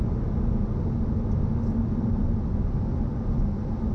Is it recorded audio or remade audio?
recorded